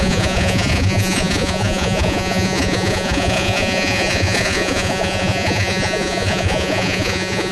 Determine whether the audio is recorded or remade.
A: remade